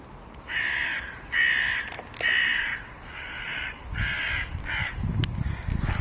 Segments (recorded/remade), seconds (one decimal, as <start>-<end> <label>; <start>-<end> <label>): 0.0-6.0 recorded